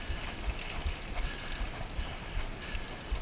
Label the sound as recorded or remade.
recorded